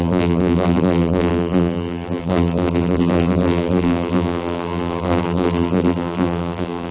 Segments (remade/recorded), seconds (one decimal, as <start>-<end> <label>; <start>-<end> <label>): 0.0-6.9 remade